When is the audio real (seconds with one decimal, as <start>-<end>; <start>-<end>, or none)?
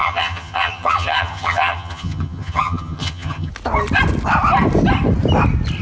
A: 3.5-5.8